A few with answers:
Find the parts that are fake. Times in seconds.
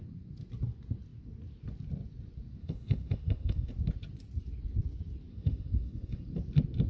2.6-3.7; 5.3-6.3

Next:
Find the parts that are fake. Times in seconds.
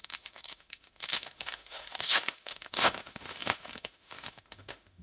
0.0-5.0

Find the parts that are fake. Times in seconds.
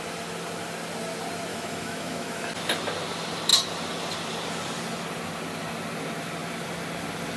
1.5-2.5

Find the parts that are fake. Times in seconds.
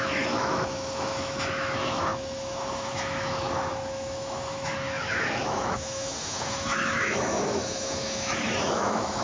0.0-9.2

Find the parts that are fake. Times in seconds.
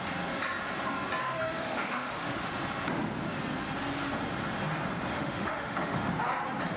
1.2-2.5; 5.1-6.1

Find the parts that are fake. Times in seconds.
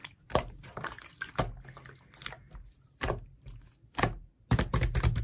none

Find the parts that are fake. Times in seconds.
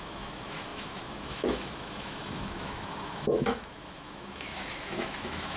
0.0-5.6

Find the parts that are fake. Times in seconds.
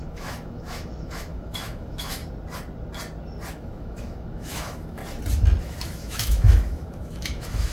0.0-2.2; 3.5-5.0; 5.6-7.7